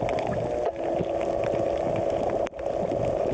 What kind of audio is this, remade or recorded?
recorded